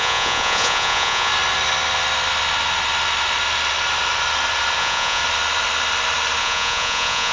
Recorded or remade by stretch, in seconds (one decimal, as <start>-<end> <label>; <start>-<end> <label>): 0.0-1.3 remade; 1.3-4.8 recorded; 4.8-5.2 remade; 5.2-6.4 recorded; 6.4-7.3 remade